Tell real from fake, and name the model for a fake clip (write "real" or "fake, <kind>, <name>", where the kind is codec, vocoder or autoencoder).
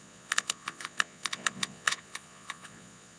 fake, vocoder, Vocos